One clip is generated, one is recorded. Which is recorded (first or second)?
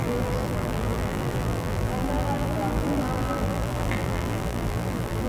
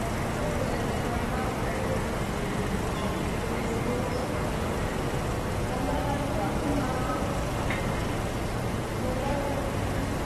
second